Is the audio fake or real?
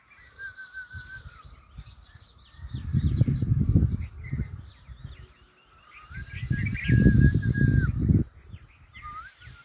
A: real